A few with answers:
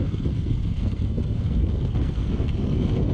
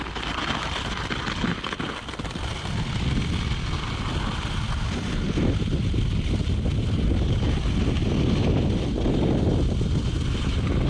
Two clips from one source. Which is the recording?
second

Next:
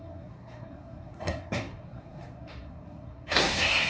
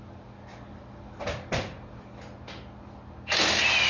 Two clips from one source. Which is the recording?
second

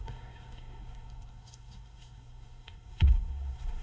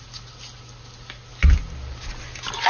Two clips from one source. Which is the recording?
second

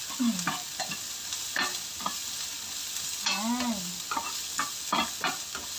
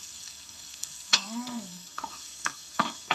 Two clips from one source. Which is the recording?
first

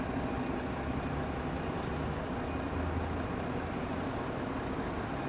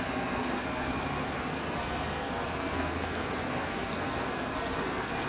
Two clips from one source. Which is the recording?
first